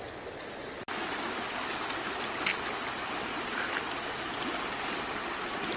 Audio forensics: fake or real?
real